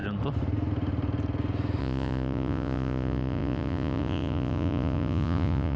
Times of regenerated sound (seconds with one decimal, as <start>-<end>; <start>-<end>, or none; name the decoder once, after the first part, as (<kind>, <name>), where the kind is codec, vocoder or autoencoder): 1.8-5.8 (vocoder, Vocos)